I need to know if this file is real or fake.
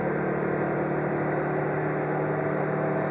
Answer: real